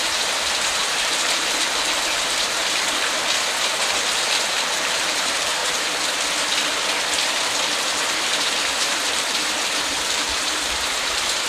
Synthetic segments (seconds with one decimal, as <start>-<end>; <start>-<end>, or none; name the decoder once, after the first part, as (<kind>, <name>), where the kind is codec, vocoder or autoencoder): 0.0-2.6 (vocoder, BigVGAN v2); 4.5-5.6; 7.9-11.5